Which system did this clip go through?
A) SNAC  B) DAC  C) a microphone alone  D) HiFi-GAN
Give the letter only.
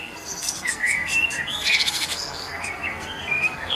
A